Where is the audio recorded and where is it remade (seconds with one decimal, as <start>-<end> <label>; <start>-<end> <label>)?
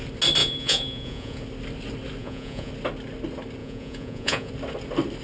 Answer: 0.0-0.4 recorded; 0.4-1.4 remade; 1.4-2.2 recorded; 2.2-2.7 remade; 2.7-3.6 recorded; 3.6-4.5 remade; 4.5-5.2 recorded